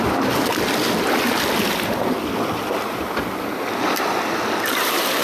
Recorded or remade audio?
recorded